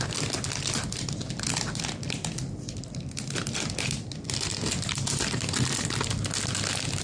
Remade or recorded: remade